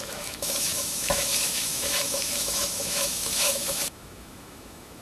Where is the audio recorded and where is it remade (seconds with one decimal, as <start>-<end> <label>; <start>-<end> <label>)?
0.0-5.0 remade